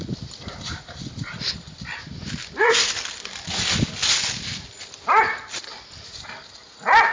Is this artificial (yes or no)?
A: no